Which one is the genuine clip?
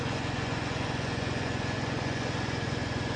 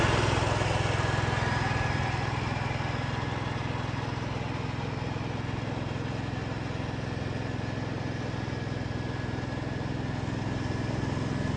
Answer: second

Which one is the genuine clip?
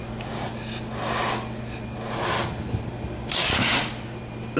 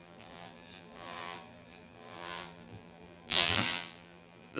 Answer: first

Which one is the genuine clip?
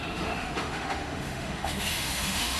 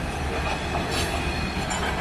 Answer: second